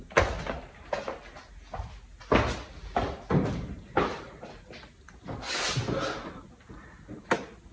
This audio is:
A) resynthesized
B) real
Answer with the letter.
B